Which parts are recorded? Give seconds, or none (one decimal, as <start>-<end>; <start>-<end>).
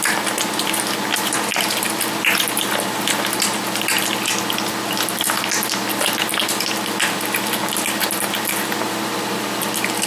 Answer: 0.0-10.1